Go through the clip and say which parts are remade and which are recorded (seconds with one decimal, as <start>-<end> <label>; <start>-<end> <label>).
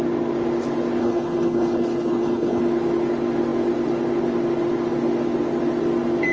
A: 0.0-1.0 recorded; 1.0-2.6 remade; 2.6-6.3 recorded